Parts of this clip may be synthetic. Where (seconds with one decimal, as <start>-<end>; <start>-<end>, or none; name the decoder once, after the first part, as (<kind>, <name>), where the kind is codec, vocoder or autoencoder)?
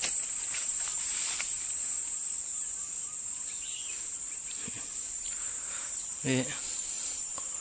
0.0-7.6 (vocoder, BigVGAN v2)